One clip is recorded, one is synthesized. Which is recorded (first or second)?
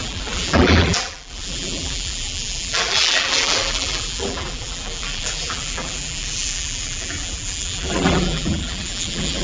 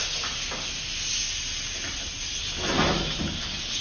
second